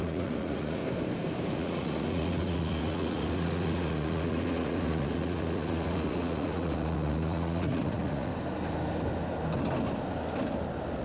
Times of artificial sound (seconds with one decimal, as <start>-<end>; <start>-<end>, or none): 0.0-0.8; 1.5-8.3